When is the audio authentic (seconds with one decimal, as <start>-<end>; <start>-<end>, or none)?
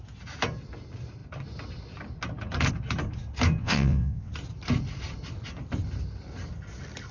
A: 0.0-3.6; 4.3-7.1